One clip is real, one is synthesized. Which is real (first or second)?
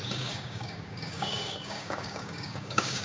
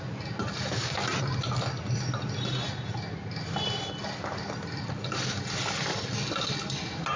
second